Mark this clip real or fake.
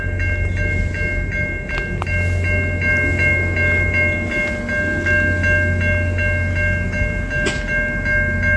real